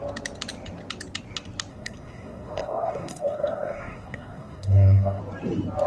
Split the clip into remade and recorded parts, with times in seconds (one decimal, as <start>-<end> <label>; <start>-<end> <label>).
0.0-1.7 recorded; 1.7-5.2 remade; 5.2-5.9 recorded